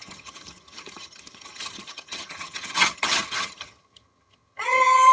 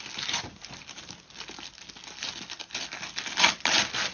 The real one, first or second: second